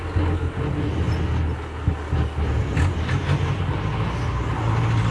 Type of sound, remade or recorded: recorded